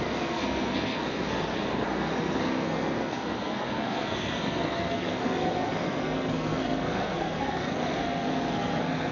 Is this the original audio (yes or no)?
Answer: no